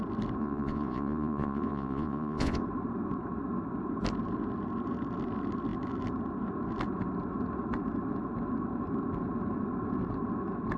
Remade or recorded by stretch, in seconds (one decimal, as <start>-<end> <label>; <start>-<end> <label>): 0.0-0.4 recorded; 0.4-2.6 remade; 2.6-10.8 recorded